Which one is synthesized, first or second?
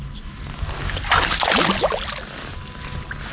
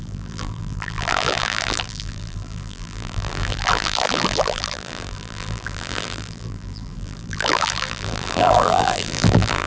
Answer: second